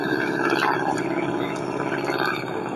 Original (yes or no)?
yes